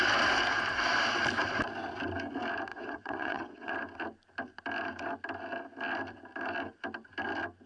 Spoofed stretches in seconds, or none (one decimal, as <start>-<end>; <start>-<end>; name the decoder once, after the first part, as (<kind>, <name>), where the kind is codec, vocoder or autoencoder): 2.7-3.7 (vocoder, WaveNeXt)